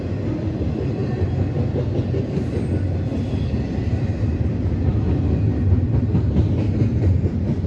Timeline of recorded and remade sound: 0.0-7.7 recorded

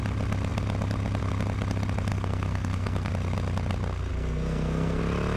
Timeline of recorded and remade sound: 0.0-2.1 recorded; 2.1-3.1 remade; 3.1-4.1 recorded; 4.1-5.0 remade; 5.0-5.4 recorded

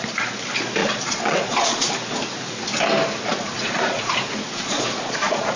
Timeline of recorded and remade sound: 0.0-0.8 recorded; 0.8-1.9 remade; 1.9-3.3 recorded; 3.3-5.6 remade

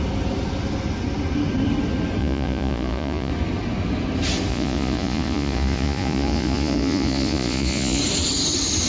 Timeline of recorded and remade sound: 0.0-2.2 recorded; 2.2-3.3 remade; 3.3-4.5 recorded; 4.5-8.0 remade; 8.0-8.9 recorded

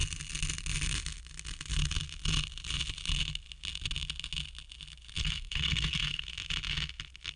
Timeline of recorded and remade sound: 0.0-5.2 recorded; 5.2-6.2 remade; 6.2-7.4 recorded

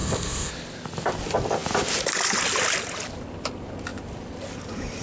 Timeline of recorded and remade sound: 0.0-0.5 remade; 0.5-5.0 recorded